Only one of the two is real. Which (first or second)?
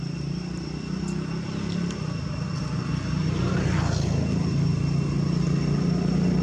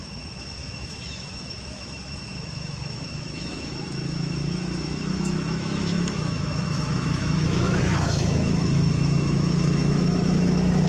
first